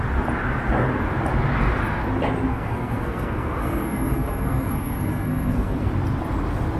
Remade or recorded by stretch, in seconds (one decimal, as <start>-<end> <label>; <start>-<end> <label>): 0.0-2.5 recorded; 2.5-5.9 remade; 5.9-6.8 recorded